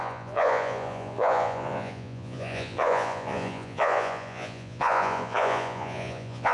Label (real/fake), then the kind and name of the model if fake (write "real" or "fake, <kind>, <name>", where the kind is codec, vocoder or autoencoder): fake, vocoder, Vocos